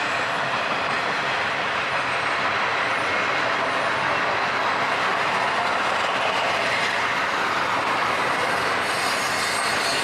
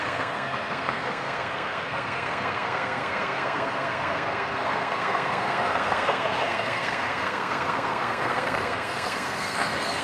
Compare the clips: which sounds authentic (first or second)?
first